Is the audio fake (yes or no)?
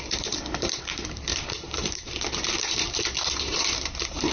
yes